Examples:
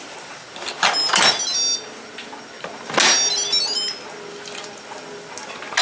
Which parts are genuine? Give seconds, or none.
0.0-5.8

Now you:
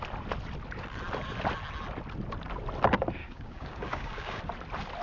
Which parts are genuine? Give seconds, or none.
0.0-3.2; 4.4-5.0